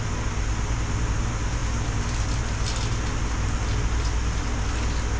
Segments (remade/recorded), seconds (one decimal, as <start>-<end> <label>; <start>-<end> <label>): 0.0-5.2 recorded